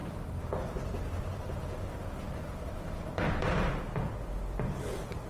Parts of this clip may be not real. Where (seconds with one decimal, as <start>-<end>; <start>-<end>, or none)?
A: 0.0-5.3